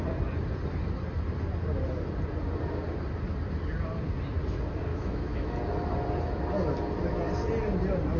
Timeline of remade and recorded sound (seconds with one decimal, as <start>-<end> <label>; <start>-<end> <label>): 0.0-4.9 recorded; 4.9-5.6 remade; 5.6-8.2 recorded